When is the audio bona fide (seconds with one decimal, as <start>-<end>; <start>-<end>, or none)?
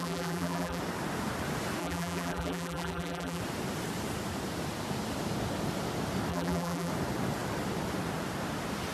0.8-1.8; 3.4-6.3; 6.9-8.9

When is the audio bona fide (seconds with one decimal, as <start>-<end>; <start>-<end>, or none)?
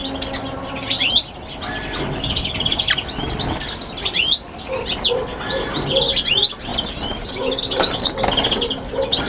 0.0-9.3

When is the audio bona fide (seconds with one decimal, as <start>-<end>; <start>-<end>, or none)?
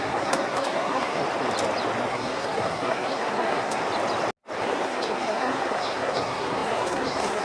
1.2-2.1; 3.8-4.6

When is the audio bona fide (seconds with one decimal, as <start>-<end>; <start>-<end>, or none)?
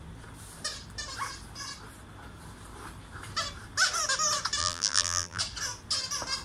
0.0-4.6; 5.4-6.4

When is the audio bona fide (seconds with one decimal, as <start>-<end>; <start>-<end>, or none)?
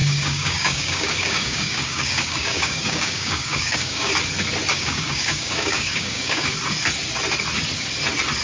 4.1-4.7; 6.5-8.4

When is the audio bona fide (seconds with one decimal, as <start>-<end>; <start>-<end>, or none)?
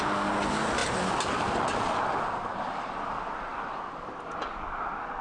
0.0-5.2